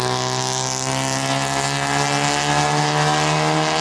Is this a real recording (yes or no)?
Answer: yes